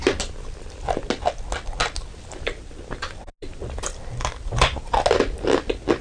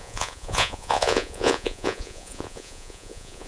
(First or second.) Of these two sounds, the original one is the first